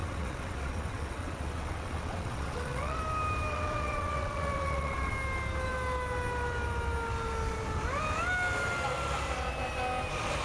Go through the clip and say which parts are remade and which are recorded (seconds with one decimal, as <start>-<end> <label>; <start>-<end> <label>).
0.0-3.0 remade; 3.0-3.5 recorded; 3.5-5.1 remade; 5.1-10.4 recorded